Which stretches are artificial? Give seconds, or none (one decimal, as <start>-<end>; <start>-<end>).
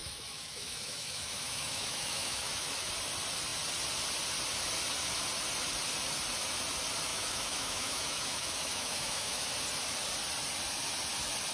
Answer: 0.0-2.9; 7.1-9.5